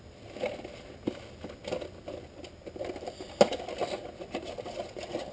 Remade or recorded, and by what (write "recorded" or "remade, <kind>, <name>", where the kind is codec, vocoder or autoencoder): recorded